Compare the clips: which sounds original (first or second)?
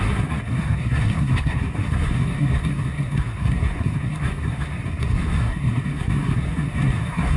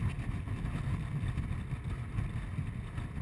second